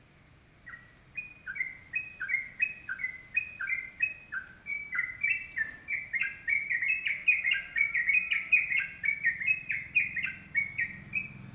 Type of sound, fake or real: real